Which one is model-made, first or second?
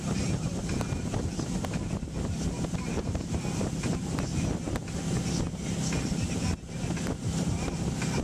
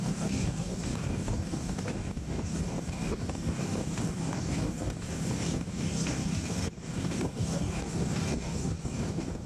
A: second